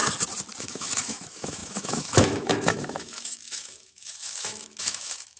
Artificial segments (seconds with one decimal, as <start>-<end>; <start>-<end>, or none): 0.6-5.4